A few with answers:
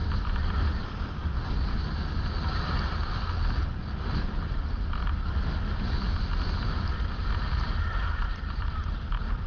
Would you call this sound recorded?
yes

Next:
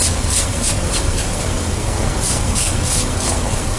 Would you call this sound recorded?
no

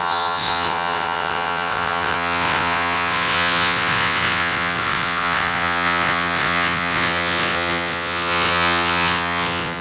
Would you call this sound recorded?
no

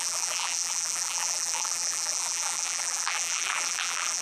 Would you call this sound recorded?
no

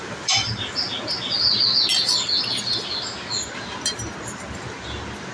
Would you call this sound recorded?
yes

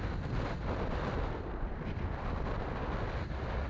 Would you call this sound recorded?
yes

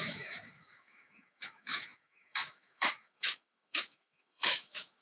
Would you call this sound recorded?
no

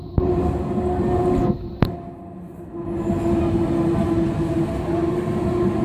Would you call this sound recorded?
yes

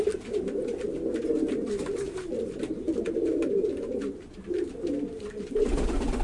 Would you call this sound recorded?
yes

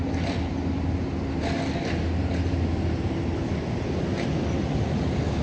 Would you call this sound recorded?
yes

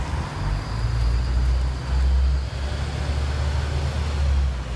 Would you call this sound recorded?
yes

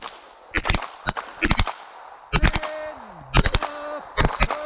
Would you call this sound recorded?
yes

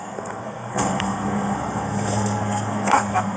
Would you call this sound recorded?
no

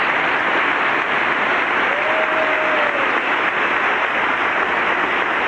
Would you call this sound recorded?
yes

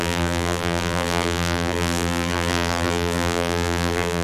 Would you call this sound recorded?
no